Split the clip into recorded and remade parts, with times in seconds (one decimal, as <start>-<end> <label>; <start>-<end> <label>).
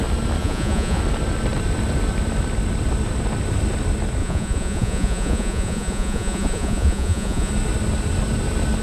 0.0-0.4 recorded; 0.4-1.0 remade; 1.0-4.2 recorded; 4.2-7.5 remade; 7.5-8.8 recorded